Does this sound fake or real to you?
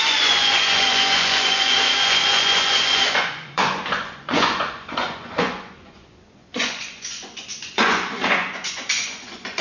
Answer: fake